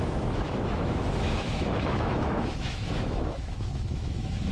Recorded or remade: remade